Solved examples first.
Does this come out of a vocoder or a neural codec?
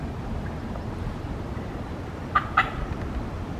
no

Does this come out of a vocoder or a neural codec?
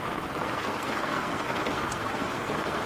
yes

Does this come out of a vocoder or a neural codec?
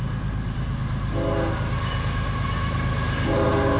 no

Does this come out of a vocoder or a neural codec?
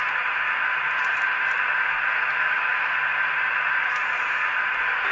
no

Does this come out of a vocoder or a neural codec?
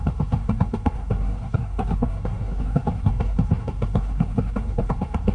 yes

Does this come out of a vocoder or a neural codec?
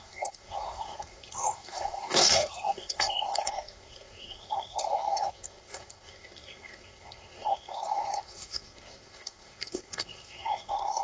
yes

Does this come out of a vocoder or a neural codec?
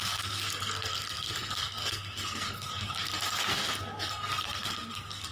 yes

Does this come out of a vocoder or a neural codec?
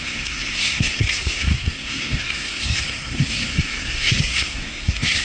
yes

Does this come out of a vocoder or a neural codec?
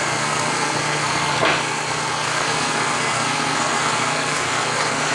yes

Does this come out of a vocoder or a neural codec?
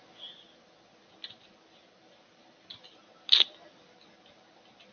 no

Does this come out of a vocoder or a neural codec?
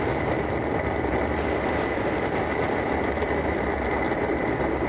no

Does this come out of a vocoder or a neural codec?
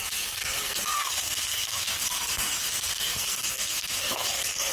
yes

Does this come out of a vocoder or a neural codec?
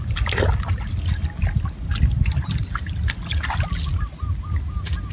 no